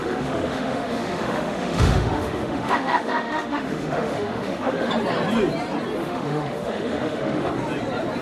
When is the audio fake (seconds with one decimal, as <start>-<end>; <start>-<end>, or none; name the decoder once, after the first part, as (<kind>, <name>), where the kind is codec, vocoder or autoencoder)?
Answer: 0.0-4.9 (autoencoder, DAC-VAE); 6.0-7.5